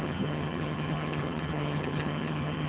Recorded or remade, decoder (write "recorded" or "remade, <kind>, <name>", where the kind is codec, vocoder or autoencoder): remade, vocoder, HiFi-GAN